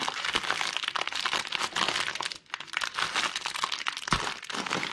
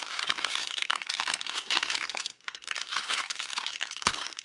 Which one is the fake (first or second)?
second